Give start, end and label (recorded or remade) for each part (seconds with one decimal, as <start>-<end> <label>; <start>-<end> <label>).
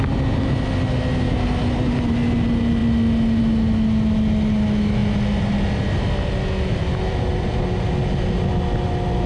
0.0-9.3 recorded